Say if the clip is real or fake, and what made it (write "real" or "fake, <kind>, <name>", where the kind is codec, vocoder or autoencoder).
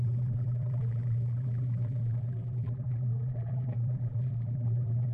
fake, vocoder, BigVGAN v2